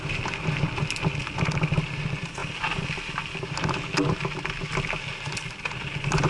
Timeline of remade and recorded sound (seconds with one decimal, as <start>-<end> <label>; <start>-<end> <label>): 0.0-6.3 recorded